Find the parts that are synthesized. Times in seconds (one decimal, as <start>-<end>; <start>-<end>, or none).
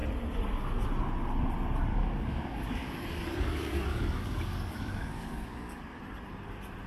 1.9-6.0